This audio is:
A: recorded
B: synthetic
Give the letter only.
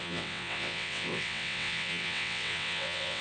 B